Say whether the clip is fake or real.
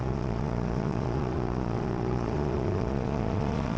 fake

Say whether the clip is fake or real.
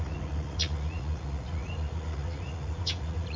fake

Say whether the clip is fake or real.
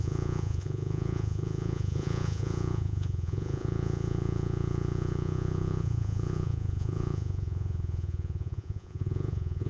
fake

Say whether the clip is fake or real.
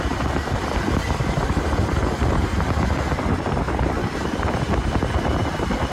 real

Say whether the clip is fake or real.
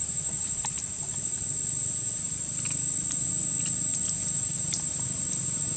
real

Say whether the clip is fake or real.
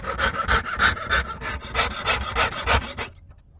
real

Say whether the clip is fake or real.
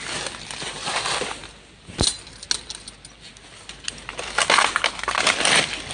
real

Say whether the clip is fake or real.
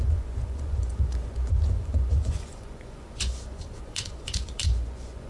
fake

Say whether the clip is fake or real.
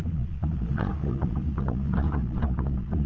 fake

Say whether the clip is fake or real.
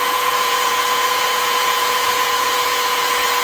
fake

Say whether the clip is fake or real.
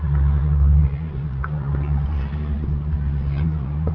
fake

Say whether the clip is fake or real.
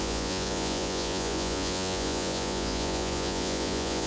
fake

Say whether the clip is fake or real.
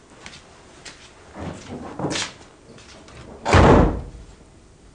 real